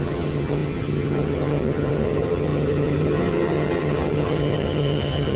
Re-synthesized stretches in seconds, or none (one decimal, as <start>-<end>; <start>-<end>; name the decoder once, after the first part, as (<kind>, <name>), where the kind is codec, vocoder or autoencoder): 0.0-5.4 (vocoder, HiFi-GAN)